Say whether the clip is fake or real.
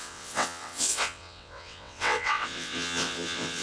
fake